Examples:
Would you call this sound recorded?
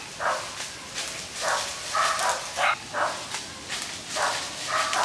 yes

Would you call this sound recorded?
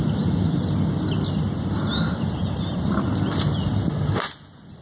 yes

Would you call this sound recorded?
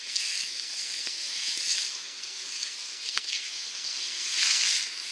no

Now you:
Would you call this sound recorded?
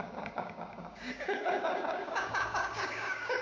no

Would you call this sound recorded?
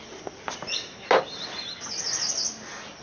yes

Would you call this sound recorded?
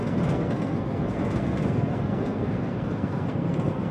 no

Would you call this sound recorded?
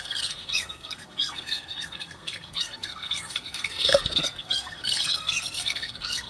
no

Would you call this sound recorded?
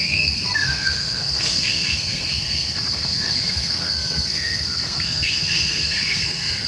no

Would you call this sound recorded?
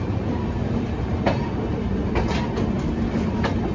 yes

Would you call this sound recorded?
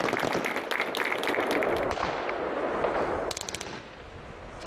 yes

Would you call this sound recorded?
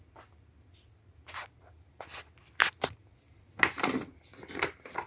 yes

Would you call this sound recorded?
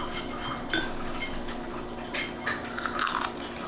yes